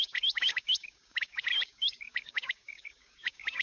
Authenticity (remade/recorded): remade